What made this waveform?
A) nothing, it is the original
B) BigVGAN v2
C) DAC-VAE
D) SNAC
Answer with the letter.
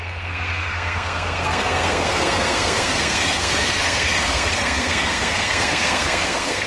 D